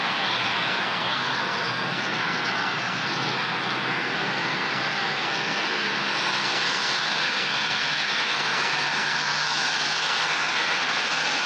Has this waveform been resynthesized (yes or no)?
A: yes